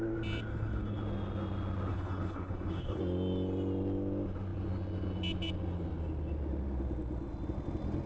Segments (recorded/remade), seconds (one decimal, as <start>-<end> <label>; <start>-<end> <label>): 0.0-0.5 recorded; 0.5-1.0 remade; 1.0-1.9 recorded; 1.9-3.0 remade; 3.0-8.1 recorded